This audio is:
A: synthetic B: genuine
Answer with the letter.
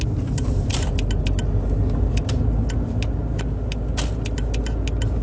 B